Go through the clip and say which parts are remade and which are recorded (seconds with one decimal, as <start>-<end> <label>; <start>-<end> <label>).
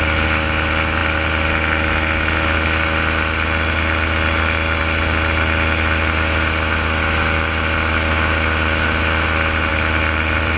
0.0-9.7 recorded; 9.7-10.6 remade